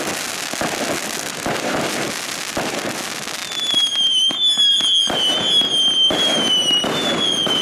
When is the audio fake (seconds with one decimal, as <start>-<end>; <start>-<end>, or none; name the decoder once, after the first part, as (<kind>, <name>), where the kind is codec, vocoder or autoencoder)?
none